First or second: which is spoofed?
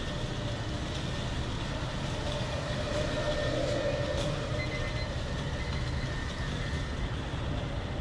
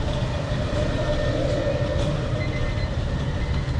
second